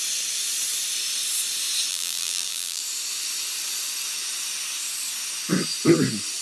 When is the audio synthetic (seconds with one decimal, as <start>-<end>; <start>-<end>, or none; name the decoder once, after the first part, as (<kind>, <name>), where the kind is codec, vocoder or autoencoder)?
1.9-2.8 (vocoder, BigVGAN v2)